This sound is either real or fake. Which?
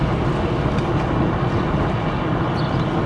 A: real